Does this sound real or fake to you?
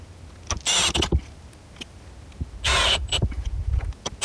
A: real